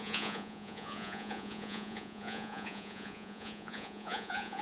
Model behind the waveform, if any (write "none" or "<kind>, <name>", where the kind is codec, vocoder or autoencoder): vocoder, Vocos